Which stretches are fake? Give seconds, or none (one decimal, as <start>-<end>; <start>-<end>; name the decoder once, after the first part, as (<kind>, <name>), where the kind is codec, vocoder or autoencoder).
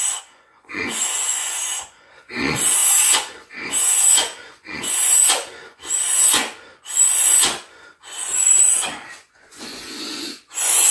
0.0-10.9 (vocoder, Vocos)